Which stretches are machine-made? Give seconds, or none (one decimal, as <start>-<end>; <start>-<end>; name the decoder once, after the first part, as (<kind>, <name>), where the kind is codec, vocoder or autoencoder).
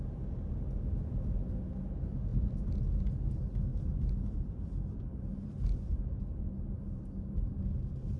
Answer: 3.7-7.3 (vocoder, BigVGAN v2)